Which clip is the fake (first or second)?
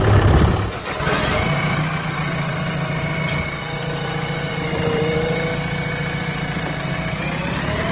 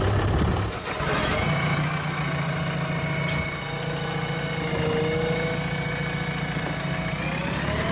first